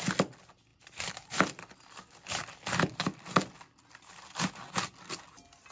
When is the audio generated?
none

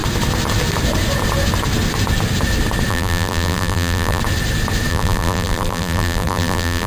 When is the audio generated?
2.9-4.2 (vocoder, BigVGAN v2); 4.9-6.9

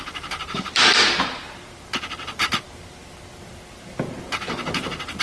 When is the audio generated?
0.0-3.0 (vocoder, BigVGAN v2)

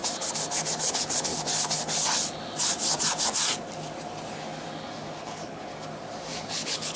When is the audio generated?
0.8-1.3 (codec, HILCodec); 5.2-5.7; 6.3-7.0

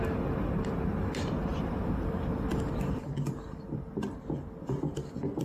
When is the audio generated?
1.5-4.0 (vocoder, BigVGAN v2)

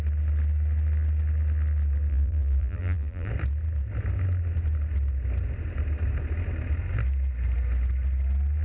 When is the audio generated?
2.1-3.3 (vocoder, BigVGAN v2)